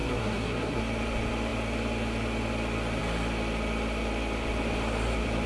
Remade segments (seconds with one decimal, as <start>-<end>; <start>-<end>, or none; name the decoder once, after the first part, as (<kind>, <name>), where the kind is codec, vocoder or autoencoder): 0.0-0.8 (codec, SNAC)